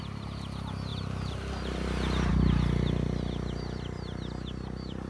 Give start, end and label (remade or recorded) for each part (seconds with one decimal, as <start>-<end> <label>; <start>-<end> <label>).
0.0-5.1 recorded